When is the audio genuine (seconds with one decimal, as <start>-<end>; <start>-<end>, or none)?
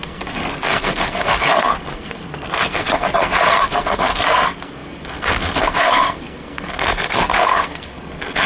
none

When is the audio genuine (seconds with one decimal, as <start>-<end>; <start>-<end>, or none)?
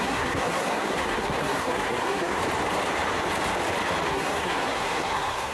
2.4-4.1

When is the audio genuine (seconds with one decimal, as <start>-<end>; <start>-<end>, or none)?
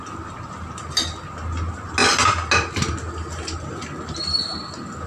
0.0-5.1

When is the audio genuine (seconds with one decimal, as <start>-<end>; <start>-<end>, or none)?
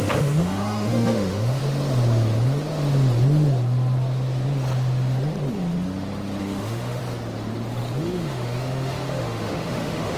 1.6-6.4; 7.0-8.0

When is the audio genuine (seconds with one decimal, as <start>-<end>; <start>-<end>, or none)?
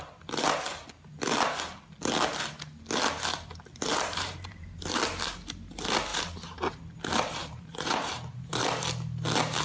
0.0-3.8; 5.0-6.1; 6.7-7.4; 8.8-9.6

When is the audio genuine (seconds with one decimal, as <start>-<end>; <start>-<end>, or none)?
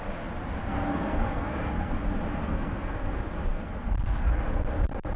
0.0-0.6; 1.9-2.4; 3.1-3.5; 4.3-5.2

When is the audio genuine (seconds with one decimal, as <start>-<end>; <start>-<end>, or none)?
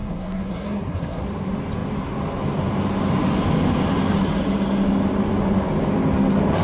1.2-6.6